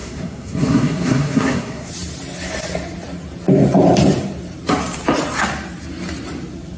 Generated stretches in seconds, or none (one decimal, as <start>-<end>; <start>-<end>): 0.0-1.9